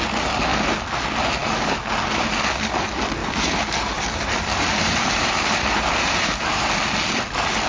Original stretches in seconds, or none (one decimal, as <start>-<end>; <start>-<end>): 0.0-3.2; 6.7-7.7